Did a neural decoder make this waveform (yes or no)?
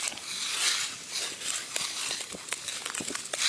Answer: no